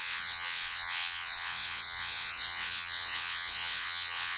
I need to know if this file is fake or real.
fake